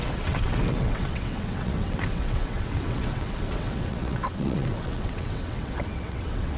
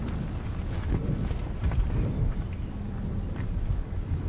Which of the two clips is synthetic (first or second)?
first